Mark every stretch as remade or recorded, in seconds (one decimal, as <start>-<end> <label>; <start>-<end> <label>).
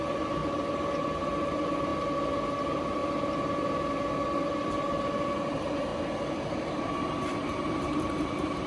0.0-0.4 remade; 0.4-1.2 recorded; 1.2-1.9 remade; 1.9-2.6 recorded; 2.6-3.0 remade; 3.0-4.7 recorded; 4.7-5.9 remade; 5.9-6.5 recorded; 6.5-8.7 remade